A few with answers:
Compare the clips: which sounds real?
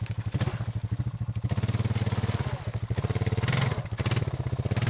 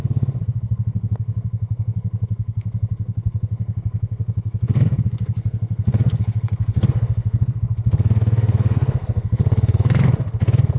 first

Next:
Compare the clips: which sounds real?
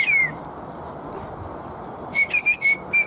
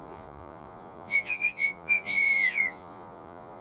first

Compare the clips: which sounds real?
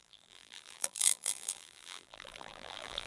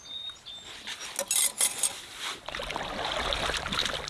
second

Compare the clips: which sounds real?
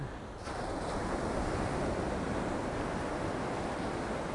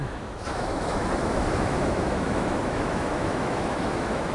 first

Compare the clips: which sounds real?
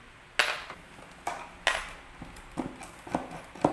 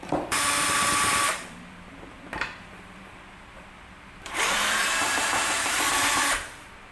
first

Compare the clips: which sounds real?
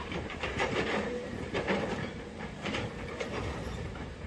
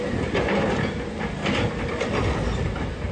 second